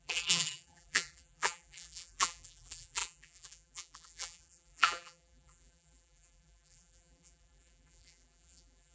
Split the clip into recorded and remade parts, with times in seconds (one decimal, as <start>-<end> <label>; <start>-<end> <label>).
0.0-8.9 remade